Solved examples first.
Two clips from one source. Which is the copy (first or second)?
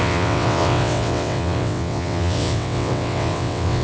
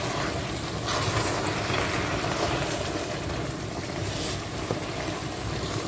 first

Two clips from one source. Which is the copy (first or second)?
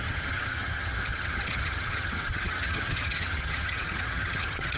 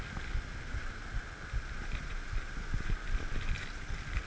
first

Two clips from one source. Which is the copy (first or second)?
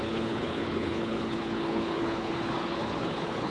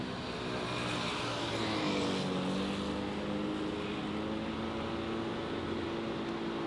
first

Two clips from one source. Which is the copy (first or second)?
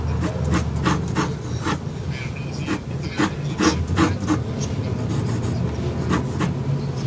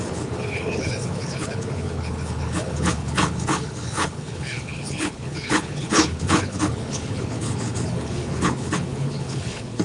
second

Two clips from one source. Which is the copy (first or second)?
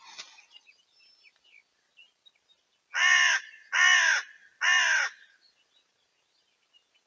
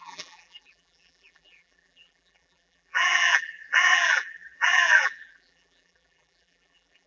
second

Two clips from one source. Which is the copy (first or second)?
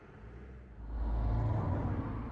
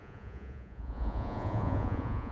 second